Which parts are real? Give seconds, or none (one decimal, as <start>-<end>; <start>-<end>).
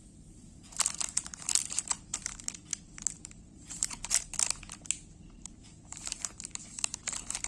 none